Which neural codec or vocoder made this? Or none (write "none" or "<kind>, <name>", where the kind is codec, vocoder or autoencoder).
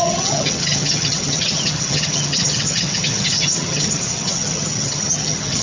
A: vocoder, HiFi-GAN